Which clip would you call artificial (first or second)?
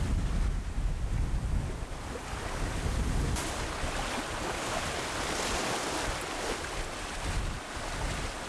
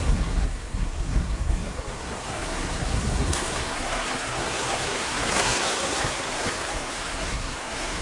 second